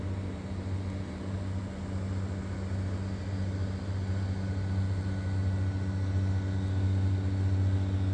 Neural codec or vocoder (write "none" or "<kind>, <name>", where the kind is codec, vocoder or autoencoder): none